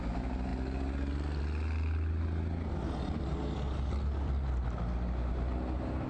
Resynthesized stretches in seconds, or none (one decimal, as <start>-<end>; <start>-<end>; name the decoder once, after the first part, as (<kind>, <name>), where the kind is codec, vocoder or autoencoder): none